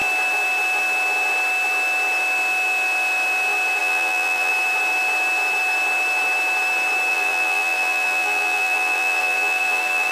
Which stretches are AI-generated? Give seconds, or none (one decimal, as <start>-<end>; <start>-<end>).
3.8-4.5; 7.1-10.1